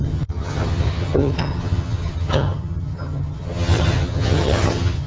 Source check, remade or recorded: remade